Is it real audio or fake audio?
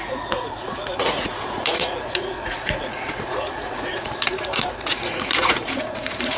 fake